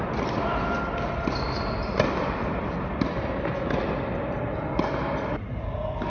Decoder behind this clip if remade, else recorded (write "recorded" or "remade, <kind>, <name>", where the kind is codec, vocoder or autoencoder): recorded